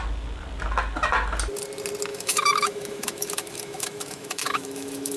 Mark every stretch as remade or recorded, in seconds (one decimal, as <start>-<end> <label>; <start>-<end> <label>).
0.0-2.1 recorded; 2.1-5.2 remade